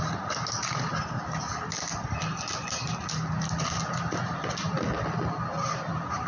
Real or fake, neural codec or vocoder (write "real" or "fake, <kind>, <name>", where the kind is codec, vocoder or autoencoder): real